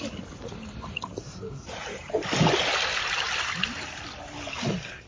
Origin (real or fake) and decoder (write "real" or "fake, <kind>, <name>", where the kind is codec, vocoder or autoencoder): real